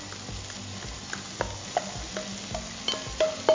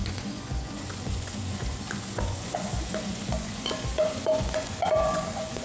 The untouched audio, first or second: first